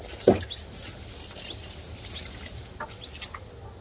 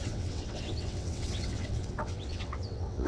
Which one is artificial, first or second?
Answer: second